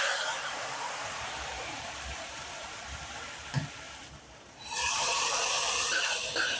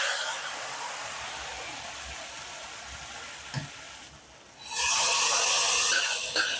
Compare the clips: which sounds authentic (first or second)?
second